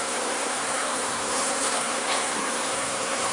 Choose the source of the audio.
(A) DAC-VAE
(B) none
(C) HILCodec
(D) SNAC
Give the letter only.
D